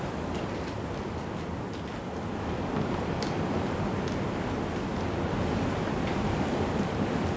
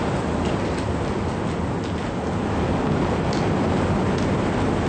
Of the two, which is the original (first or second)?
second